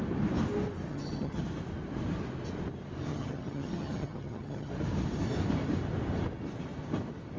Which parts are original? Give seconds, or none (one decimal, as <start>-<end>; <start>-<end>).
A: 0.0-0.9; 1.4-3.1; 4.7-7.4